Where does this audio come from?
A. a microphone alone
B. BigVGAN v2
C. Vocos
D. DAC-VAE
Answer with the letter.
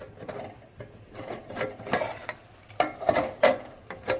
A